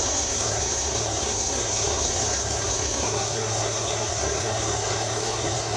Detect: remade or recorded remade